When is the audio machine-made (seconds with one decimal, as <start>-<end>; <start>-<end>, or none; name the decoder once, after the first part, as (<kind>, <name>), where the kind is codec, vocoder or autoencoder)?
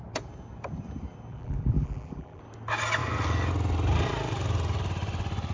1.3-2.4 (vocoder, BigVGAN v2)